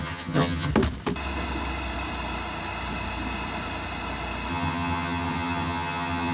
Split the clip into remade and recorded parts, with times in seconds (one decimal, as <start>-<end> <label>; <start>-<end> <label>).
0.0-0.7 remade; 0.7-4.5 recorded; 4.5-6.3 remade